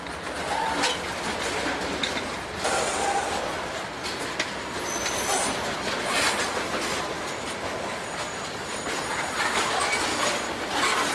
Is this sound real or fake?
real